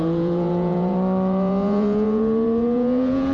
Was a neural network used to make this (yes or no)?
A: yes